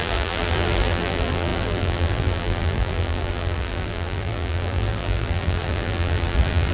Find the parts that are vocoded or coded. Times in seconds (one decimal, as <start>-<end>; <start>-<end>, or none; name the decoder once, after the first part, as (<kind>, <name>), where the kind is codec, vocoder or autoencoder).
0.0-6.7 (vocoder, BigVGAN v2)